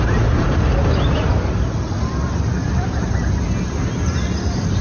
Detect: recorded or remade recorded